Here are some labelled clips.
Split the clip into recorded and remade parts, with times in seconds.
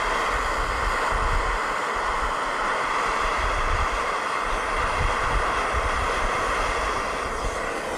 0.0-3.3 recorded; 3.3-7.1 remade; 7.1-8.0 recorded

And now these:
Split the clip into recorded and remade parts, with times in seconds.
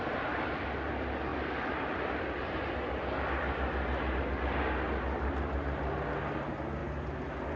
0.0-7.6 recorded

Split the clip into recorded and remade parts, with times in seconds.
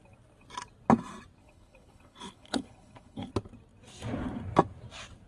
0.0-1.4 recorded; 1.4-3.3 remade; 3.3-5.3 recorded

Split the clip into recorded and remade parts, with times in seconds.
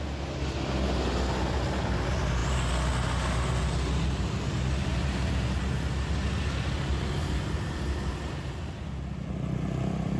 0.0-10.2 recorded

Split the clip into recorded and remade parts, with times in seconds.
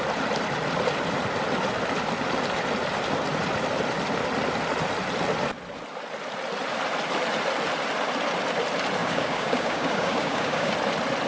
0.0-9.0 recorded; 9.0-10.7 remade; 10.7-11.3 recorded